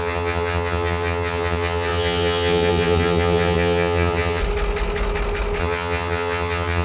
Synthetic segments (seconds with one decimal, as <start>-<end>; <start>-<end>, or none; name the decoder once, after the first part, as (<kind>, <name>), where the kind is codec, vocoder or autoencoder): 0.0-4.4 (vocoder, HiFi-GAN); 5.6-6.8